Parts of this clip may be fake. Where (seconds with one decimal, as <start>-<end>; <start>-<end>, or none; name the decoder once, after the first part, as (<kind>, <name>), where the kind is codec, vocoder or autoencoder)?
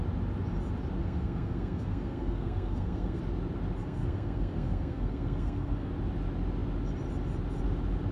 1.0-3.2 (codec, SNAC); 3.8-5.9